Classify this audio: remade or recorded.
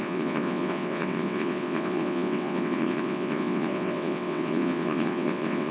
remade